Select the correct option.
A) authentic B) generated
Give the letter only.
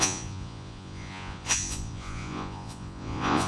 B